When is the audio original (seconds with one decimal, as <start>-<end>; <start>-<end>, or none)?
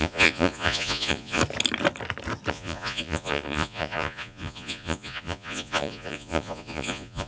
1.4-2.5